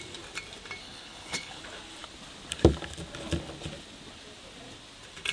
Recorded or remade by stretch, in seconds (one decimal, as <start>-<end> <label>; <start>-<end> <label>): 0.0-0.8 recorded; 0.8-1.6 remade; 1.6-5.3 recorded